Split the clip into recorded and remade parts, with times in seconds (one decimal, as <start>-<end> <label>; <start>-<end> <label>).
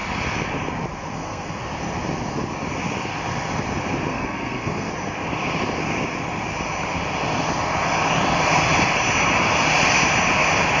0.0-1.1 recorded; 1.1-1.6 remade; 1.6-4.1 recorded; 4.1-4.9 remade; 4.9-10.8 recorded